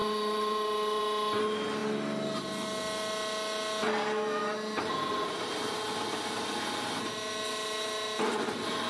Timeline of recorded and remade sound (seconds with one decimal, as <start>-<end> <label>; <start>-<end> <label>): 0.0-1.0 remade; 1.0-8.9 recorded